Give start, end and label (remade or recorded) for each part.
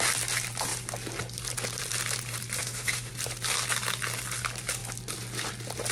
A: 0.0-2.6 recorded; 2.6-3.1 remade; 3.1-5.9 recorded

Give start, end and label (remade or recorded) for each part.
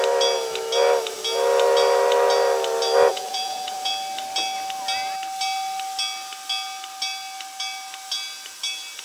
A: 0.0-3.1 recorded; 3.1-3.9 remade; 3.9-9.0 recorded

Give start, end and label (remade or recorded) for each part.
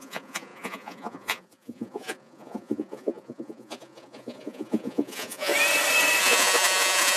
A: 0.0-5.5 remade; 5.5-6.2 recorded; 6.2-7.2 remade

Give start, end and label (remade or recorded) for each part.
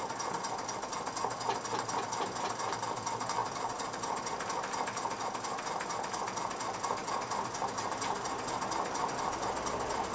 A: 0.0-10.1 recorded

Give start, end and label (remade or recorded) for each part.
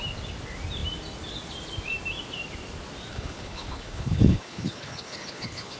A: 0.0-3.1 recorded; 3.1-5.8 remade